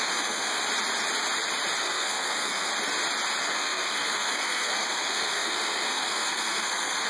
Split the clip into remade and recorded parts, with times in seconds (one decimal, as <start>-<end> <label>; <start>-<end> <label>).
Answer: 0.0-0.6 remade; 0.6-1.8 recorded; 1.8-2.7 remade; 2.7-3.4 recorded; 3.4-7.1 remade